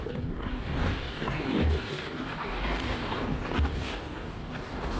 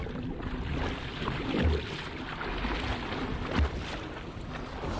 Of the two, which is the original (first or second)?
second